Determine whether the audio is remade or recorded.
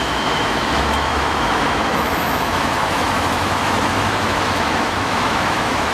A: remade